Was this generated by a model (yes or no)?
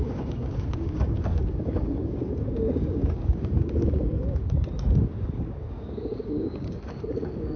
yes